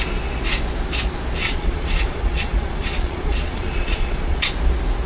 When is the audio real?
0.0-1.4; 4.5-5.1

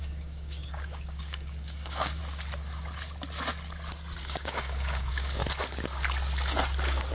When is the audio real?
2.2-4.2; 5.4-7.1

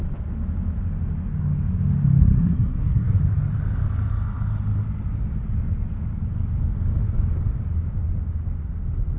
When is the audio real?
0.0-2.2; 3.2-9.2

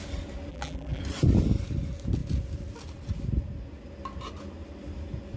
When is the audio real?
0.0-0.5; 1.0-5.4

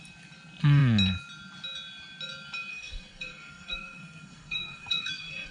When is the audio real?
0.0-2.7

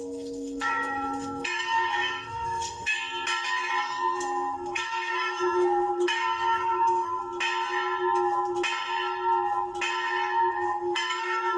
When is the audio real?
2.9-3.8; 7.2-10.5

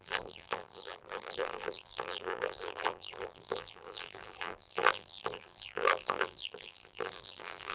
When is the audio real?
none

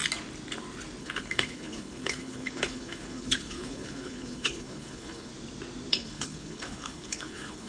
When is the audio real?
0.0-1.0; 5.3-5.9